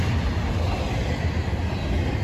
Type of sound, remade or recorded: recorded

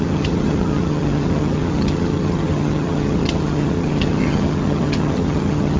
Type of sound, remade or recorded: remade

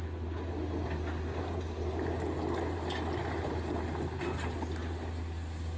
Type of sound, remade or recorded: recorded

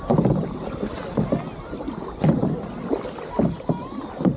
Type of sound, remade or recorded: recorded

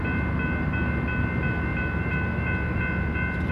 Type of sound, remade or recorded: recorded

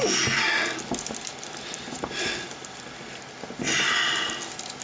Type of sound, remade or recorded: recorded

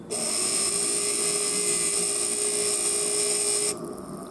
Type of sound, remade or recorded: recorded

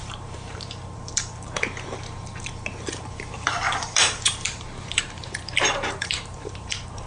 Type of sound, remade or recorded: remade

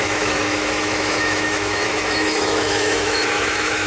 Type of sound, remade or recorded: remade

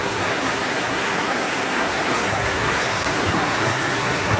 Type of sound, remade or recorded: remade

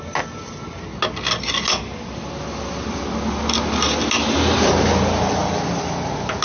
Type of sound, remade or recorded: recorded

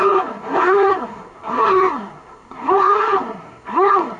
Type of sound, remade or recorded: remade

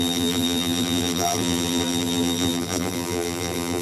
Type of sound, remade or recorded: remade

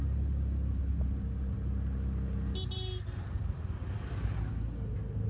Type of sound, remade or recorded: recorded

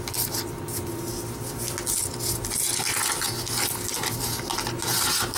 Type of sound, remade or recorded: recorded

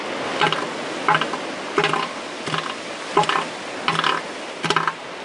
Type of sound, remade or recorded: recorded